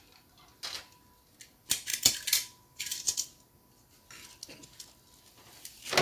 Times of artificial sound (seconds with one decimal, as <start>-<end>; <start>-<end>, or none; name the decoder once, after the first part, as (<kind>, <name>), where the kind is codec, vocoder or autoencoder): none